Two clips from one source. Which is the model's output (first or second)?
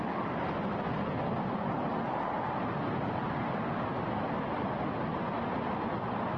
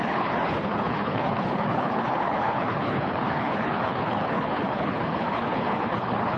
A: second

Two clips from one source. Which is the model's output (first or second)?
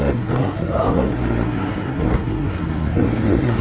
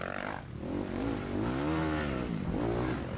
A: first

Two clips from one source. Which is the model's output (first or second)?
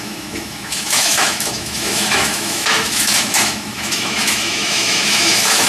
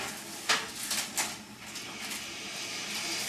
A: first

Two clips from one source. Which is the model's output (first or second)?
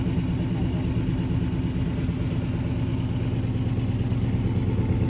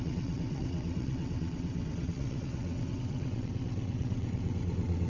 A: second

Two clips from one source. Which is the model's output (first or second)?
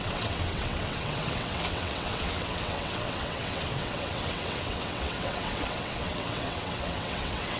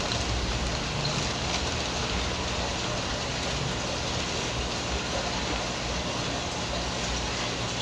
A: first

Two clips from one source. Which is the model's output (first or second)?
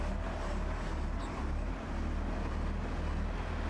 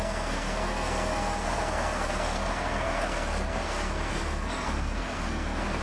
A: second